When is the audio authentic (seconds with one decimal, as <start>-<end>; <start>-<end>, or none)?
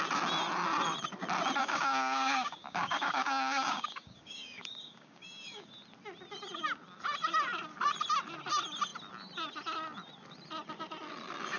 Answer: 0.0-1.6; 5.7-11.6